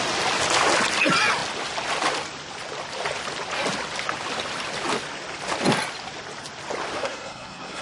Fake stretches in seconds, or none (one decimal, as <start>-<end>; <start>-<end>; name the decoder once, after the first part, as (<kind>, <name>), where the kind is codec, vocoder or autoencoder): 7.0-7.8 (codec, SNAC)

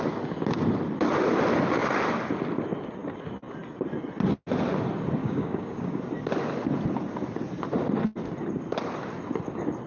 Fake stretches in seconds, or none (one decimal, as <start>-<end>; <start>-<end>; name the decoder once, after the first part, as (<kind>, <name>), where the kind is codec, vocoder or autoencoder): 5.2-6.0 (codec, DAC)

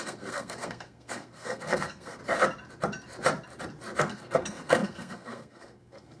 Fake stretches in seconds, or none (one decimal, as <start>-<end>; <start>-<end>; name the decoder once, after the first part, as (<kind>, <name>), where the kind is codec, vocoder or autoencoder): 0.0-2.2 (codec, SNAC); 4.0-6.2

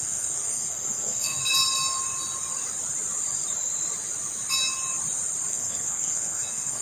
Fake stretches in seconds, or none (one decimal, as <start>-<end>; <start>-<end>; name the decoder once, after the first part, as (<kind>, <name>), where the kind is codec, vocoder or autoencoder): 0.0-1.4 (codec, SNAC); 5.5-6.8

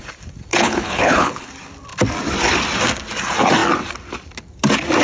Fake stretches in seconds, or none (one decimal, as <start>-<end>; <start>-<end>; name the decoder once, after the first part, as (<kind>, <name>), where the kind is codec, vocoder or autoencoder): 0.5-1.5 (codec, HILCodec)

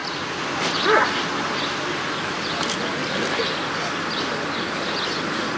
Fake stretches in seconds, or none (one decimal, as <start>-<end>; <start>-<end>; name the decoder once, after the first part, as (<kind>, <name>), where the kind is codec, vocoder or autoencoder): none

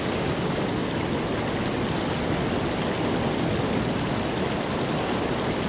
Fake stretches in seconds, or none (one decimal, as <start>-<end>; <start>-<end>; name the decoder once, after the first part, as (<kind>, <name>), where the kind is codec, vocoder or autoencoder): none